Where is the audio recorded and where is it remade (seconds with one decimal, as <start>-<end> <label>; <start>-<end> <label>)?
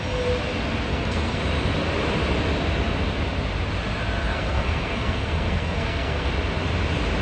0.0-0.9 recorded; 0.9-1.4 remade; 1.4-4.2 recorded; 4.2-6.3 remade; 6.3-7.2 recorded